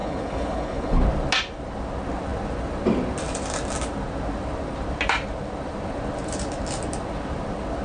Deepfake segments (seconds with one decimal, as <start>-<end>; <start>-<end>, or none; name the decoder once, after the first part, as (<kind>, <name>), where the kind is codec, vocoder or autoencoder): 0.0-1.0 (codec, HILCodec)